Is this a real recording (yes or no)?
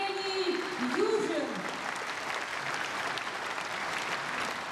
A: yes